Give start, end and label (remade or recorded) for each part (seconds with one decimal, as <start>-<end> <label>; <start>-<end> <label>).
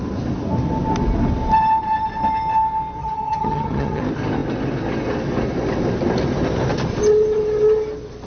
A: 0.0-3.0 recorded; 3.0-4.0 remade; 4.0-8.3 recorded